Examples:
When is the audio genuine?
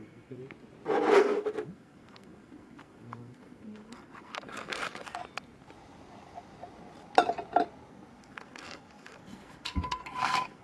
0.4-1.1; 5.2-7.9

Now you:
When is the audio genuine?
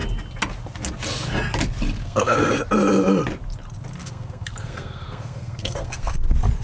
0.0-2.0; 2.5-4.0; 6.1-6.6